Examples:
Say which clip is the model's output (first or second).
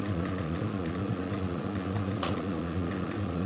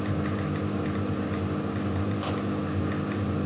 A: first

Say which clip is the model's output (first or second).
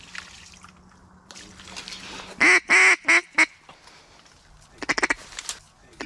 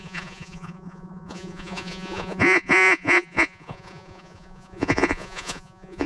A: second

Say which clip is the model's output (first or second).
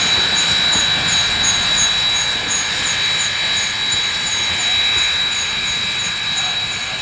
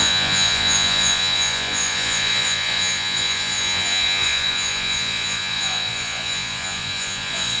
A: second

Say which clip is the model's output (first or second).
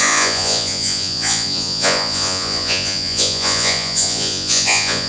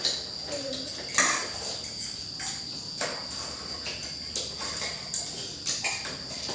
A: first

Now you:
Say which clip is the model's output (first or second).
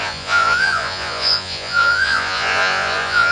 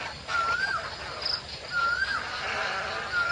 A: first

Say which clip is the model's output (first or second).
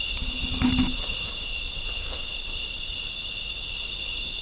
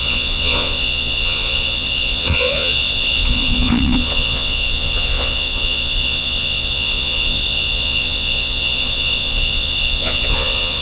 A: second